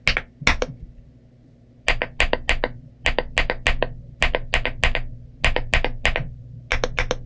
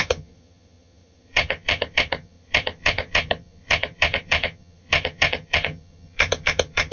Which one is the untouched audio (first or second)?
first